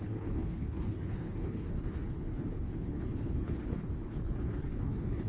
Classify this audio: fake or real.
fake